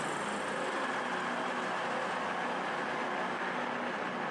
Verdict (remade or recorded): recorded